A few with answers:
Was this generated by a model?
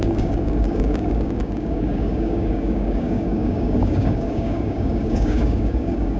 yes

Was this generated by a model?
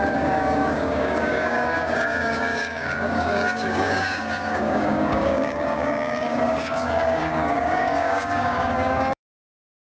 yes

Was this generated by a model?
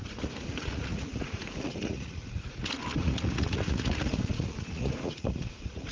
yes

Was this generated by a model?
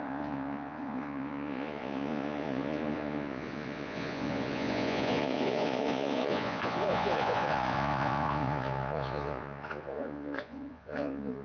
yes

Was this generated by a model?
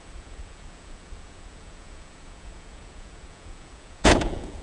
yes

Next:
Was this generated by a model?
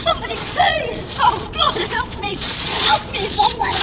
yes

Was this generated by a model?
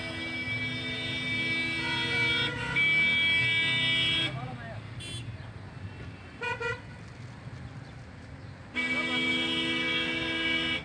no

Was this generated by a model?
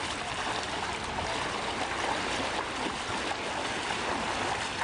no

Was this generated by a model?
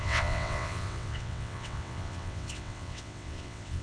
yes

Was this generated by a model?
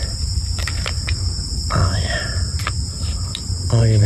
yes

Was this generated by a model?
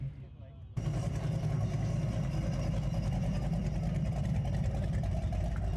no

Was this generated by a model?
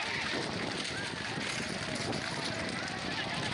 no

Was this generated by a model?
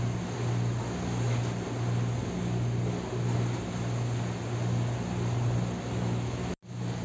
no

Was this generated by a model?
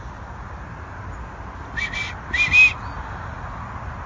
no